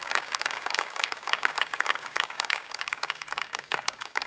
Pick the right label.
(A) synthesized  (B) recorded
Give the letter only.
A